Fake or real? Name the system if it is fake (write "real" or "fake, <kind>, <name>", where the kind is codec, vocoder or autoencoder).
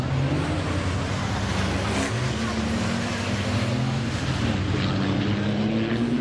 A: real